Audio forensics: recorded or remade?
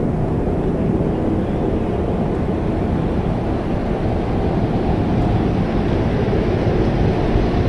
recorded